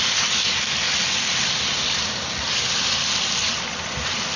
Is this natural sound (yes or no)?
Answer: no